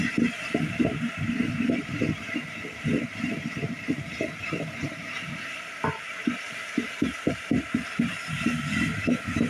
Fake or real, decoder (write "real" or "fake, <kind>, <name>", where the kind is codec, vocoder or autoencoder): fake, vocoder, BigVGAN v2